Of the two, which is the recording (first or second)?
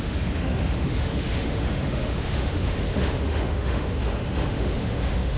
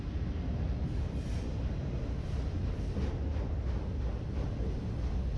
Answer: second